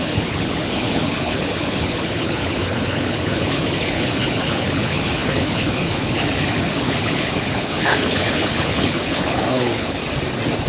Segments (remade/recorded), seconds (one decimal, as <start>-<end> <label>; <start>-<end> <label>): 0.0-10.0 remade; 10.0-10.7 recorded